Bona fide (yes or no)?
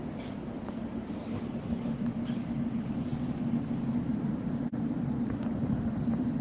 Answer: no